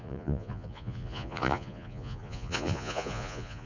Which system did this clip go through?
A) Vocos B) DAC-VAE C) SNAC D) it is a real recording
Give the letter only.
A